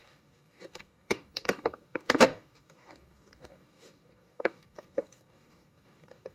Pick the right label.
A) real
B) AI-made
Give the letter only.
B